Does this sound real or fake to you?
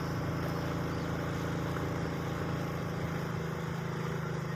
real